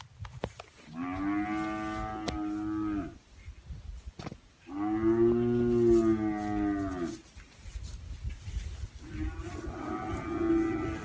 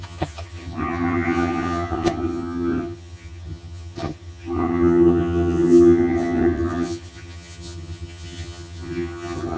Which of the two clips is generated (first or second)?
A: second